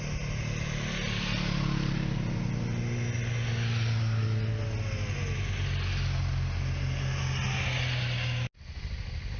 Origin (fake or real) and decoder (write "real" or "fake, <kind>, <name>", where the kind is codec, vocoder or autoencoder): real